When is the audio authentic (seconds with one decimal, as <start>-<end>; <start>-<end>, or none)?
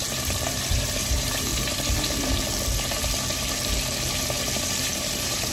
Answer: 0.0-0.7; 1.5-4.8